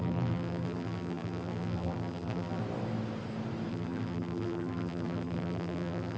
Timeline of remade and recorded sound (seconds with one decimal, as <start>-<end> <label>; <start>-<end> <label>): 0.0-2.6 remade; 2.6-3.7 recorded; 3.7-6.2 remade